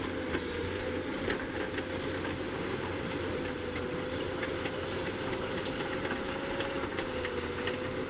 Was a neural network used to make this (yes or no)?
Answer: no